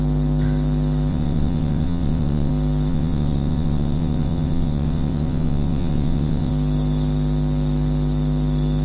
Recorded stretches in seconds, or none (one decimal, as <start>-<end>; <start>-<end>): 0.0-1.1; 2.5-2.9; 6.5-8.8